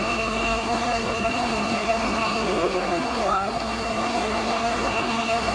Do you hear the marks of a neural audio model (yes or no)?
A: yes